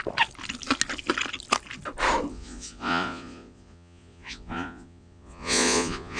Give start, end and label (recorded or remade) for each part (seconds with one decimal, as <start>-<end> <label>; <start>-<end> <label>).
0.0-2.3 recorded; 2.3-6.2 remade